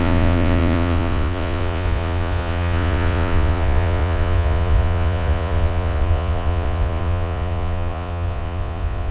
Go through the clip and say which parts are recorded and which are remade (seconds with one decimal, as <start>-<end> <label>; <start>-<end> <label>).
0.0-9.1 remade